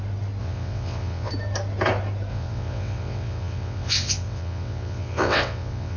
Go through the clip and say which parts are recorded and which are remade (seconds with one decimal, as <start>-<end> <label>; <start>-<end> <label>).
0.0-0.4 recorded; 0.4-1.3 remade; 1.3-2.3 recorded; 2.3-6.0 remade